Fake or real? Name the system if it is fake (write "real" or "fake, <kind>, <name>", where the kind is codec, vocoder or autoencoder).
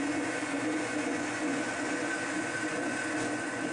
fake, vocoder, Vocos